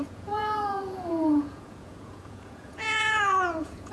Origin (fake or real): fake